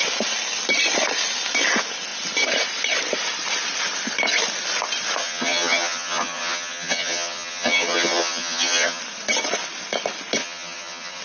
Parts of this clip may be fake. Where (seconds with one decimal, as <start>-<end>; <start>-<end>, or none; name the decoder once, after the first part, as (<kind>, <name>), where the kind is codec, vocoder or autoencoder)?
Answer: 5.2-9.0 (vocoder, HiFi-GAN); 10.4-11.2